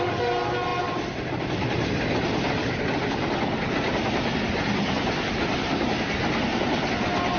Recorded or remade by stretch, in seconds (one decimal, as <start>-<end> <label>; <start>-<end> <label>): 0.0-7.4 recorded